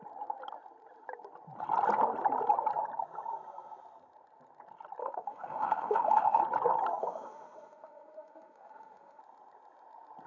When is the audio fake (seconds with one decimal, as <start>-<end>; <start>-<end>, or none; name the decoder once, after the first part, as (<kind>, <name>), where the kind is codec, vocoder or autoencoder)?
5.0-6.4 (autoencoder, DAC-VAE); 7.0-9.2